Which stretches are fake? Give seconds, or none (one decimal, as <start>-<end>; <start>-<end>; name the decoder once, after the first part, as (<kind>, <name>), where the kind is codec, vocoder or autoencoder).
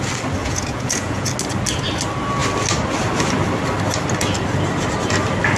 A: 0.4-1.3 (vocoder, Vocos)